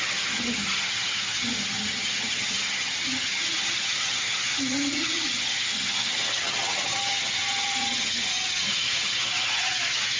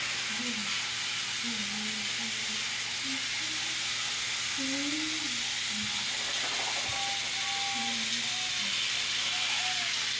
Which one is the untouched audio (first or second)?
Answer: second